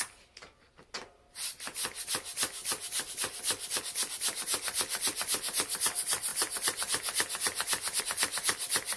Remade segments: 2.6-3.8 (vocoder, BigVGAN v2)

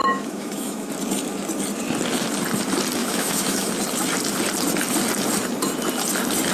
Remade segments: 0.0-0.9 (autoencoder, DAC-VAE); 3.0-3.7

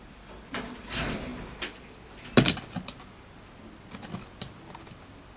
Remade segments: none